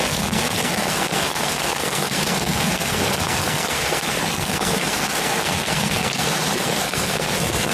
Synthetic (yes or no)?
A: yes